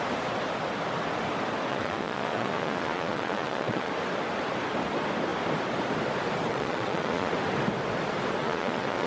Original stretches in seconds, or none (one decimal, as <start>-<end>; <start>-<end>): 0.0-1.7; 3.9-6.5; 7.3-8.4